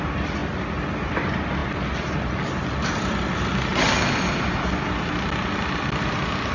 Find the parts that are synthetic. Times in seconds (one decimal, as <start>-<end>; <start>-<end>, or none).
none